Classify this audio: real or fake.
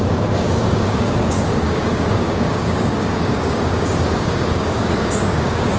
fake